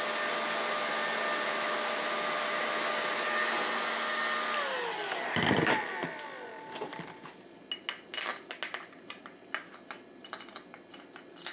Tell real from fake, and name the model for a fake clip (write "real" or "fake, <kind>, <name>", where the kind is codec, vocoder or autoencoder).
real